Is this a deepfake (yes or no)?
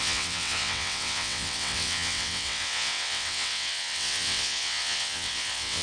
yes